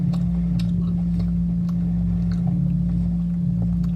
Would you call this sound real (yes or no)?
yes